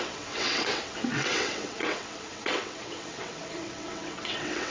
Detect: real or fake fake